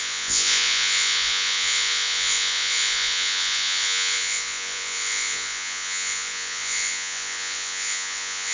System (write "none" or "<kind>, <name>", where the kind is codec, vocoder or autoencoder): vocoder, Vocos